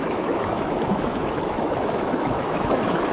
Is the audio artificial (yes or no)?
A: yes